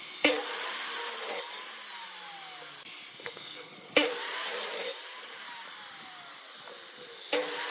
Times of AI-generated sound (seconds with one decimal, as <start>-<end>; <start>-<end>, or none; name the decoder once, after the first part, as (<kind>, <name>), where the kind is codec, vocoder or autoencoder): 3.1-3.7 (codec, SNAC)